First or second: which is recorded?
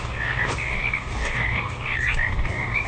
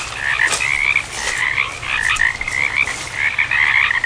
second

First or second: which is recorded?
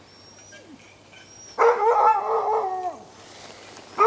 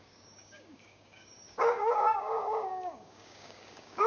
first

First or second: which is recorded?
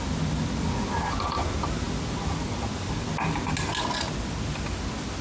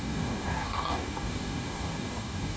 first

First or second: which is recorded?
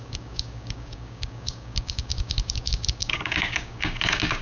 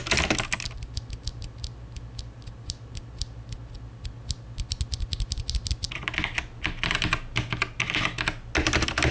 second